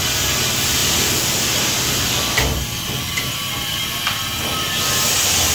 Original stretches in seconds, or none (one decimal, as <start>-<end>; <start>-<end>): 0.0-5.5